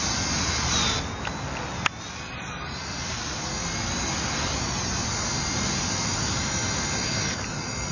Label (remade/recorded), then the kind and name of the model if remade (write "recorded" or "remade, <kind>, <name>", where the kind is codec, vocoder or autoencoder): recorded